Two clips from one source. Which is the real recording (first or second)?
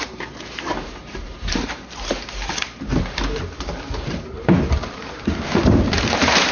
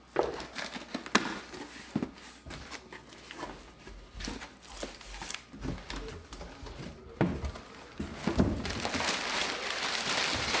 second